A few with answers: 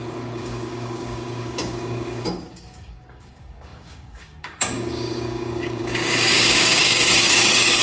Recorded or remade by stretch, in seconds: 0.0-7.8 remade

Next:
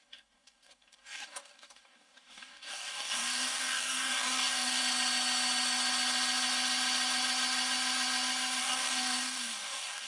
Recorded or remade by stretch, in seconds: 0.0-4.8 remade; 4.8-8.6 recorded; 8.6-10.1 remade

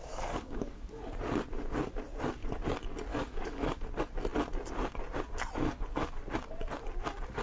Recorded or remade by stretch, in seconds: 0.0-1.0 remade; 1.0-3.1 recorded; 3.1-3.8 remade; 3.8-7.4 recorded

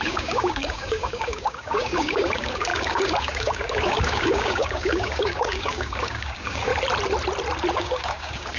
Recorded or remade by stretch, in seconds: 0.0-6.7 remade; 6.7-7.7 recorded; 7.7-8.6 remade